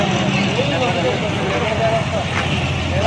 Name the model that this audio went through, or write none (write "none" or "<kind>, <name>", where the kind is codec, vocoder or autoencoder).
none